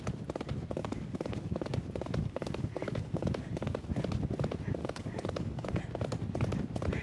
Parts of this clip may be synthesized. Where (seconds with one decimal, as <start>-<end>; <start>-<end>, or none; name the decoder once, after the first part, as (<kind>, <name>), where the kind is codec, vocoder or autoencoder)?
0.8-4.0 (codec, DAC); 4.8-5.8